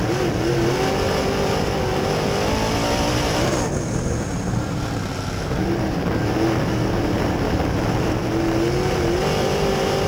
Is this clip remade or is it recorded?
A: recorded